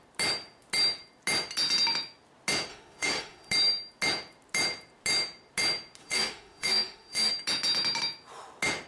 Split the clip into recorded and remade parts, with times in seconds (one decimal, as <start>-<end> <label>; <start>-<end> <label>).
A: 0.0-2.7 recorded; 2.7-3.5 remade; 3.5-6.0 recorded; 6.0-7.3 remade; 7.3-8.9 recorded

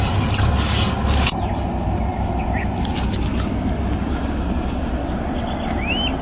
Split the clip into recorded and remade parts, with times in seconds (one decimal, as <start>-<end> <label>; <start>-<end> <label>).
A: 0.0-6.2 recorded

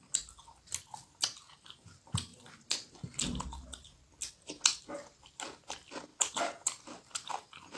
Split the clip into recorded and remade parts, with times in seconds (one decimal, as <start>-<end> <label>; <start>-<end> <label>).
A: 0.0-6.1 recorded; 6.1-7.3 remade; 7.3-7.8 recorded

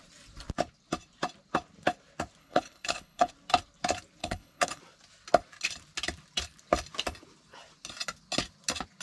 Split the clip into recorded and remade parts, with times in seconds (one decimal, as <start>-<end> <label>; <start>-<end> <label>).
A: 0.0-2.4 recorded; 2.4-3.3 remade; 3.3-4.2 recorded; 4.2-4.8 remade; 4.8-9.0 recorded

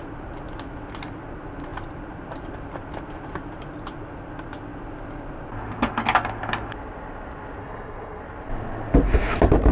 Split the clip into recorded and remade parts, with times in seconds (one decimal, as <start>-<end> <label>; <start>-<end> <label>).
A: 0.0-7.6 recorded; 7.6-8.2 remade; 8.2-9.7 recorded